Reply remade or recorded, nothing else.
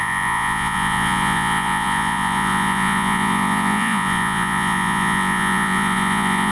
remade